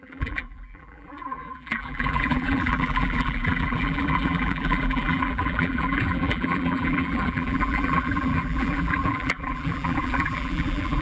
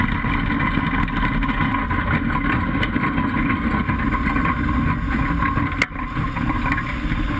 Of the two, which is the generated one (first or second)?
first